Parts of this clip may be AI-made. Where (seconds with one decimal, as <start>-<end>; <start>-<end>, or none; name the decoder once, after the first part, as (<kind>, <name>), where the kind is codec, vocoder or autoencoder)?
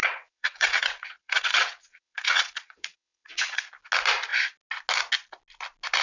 0.0-3.6 (vocoder, WaveNeXt)